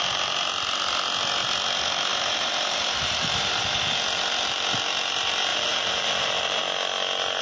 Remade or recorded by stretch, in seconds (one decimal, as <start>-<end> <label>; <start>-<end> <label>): 0.0-2.1 recorded; 2.1-3.9 remade; 3.9-5.5 recorded; 5.5-6.6 remade; 6.6-7.4 recorded